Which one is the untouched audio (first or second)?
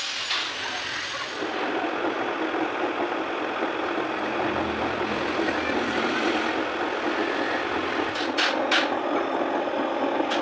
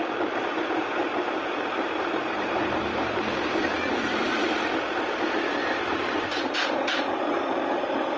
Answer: first